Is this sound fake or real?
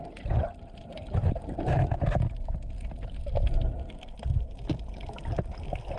fake